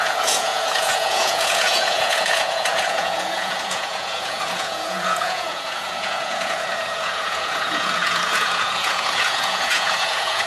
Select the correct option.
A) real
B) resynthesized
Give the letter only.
B